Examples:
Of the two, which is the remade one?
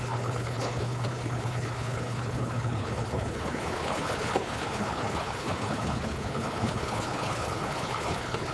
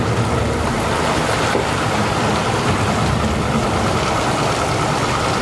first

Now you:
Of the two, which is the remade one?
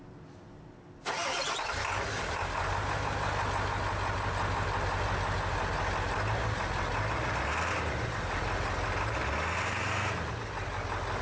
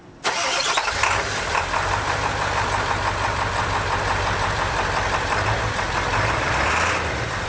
second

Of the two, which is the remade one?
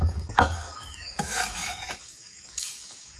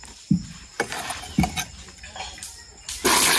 first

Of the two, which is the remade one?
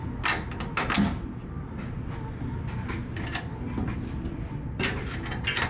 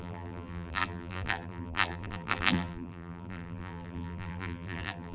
second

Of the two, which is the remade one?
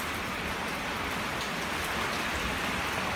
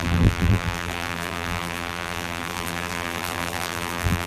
second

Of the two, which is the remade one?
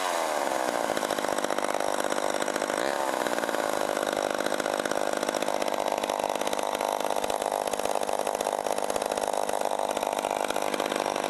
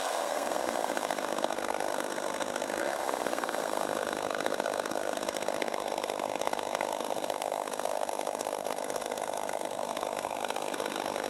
second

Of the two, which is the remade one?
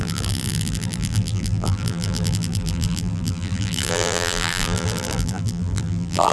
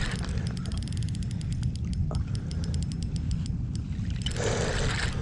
first